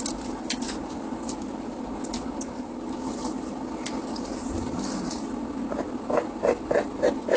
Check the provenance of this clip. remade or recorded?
recorded